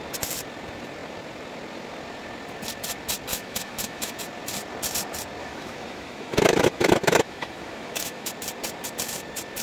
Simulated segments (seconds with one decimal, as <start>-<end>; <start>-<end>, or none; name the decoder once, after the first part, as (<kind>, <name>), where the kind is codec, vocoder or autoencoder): 3.3-4.2 (autoencoder, DAC-VAE); 5.4-8.3